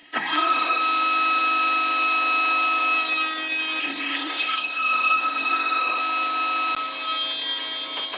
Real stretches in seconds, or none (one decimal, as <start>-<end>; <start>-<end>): 0.8-3.8; 6.0-8.2

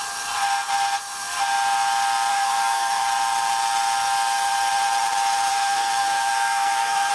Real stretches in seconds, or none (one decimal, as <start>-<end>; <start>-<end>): 0.0-2.3; 3.0-5.5

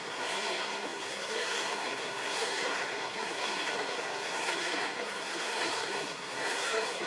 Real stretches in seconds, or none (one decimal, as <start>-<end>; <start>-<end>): none

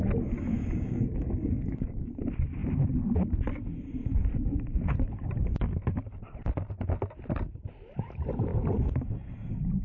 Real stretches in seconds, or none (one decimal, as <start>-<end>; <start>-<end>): 0.0-0.5; 2.0-9.8